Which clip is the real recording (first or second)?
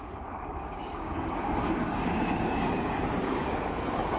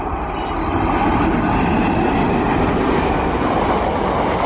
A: second